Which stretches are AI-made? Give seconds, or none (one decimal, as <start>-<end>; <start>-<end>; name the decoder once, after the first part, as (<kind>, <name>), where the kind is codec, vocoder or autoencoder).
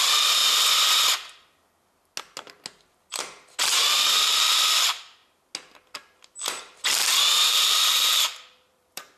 0.0-0.4 (vocoder, BigVGAN v2); 3.6-5.2; 7.5-9.2